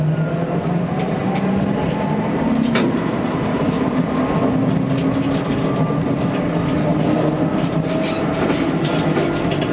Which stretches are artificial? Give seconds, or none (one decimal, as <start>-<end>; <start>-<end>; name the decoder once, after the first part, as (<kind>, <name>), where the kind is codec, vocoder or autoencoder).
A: 1.2-4.0 (vocoder, BigVGAN v2)